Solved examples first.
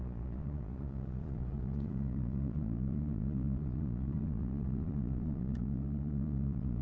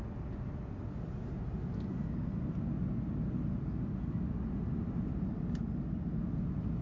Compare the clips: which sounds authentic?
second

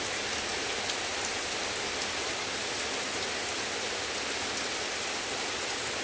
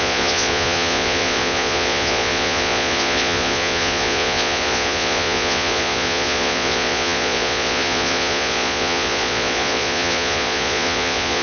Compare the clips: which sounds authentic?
first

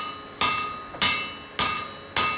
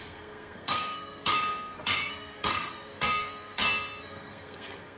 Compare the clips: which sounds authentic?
first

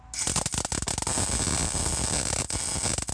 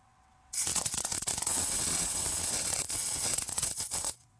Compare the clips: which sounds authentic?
first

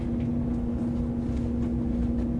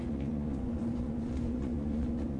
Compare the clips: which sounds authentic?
first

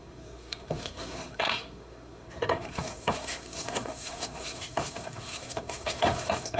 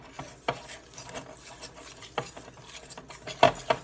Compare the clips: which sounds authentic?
second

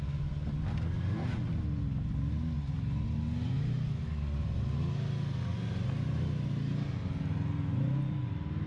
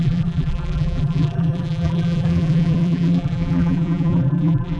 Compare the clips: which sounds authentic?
first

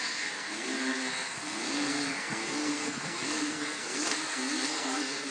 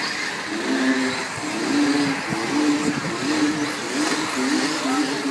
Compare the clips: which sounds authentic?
second